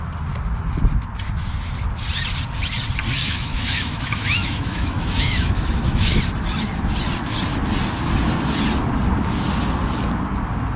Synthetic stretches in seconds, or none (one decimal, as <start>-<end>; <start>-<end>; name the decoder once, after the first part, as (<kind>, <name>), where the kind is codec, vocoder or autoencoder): 3.2-6.2 (autoencoder, DAC-VAE)